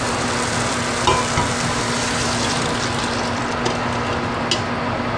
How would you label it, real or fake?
real